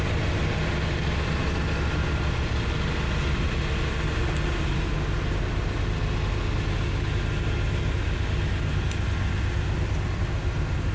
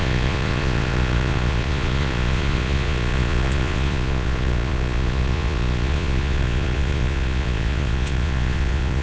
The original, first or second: first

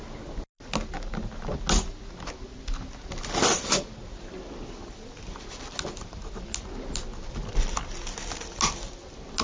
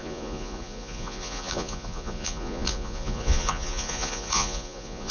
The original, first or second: first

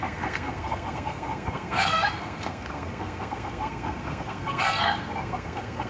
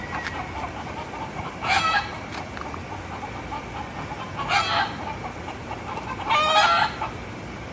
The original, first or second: second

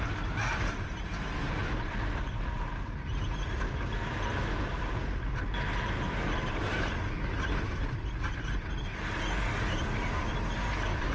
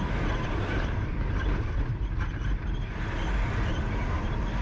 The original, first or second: first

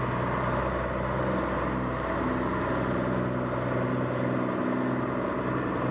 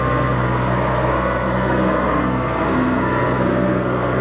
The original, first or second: first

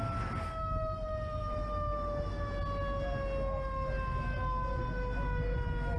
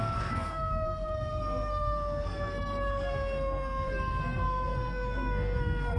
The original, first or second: first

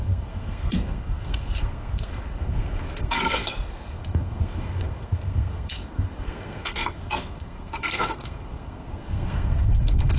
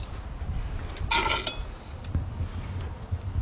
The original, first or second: second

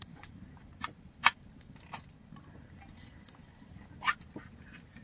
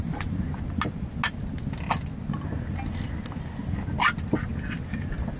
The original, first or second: second